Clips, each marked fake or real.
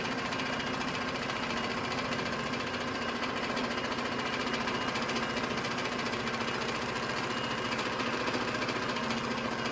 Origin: real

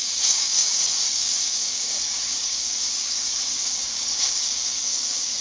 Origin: fake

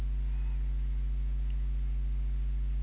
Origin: real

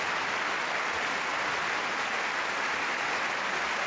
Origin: real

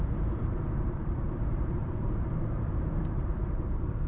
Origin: fake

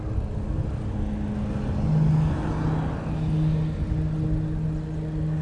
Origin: real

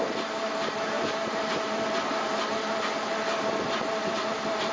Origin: real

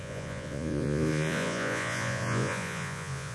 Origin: fake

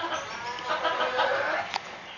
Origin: real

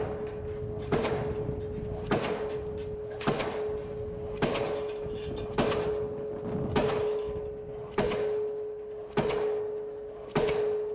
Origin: real